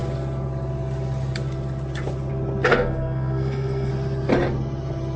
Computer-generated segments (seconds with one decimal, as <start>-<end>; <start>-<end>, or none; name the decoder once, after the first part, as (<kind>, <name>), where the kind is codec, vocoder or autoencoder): 2.7-3.9 (codec, SNAC)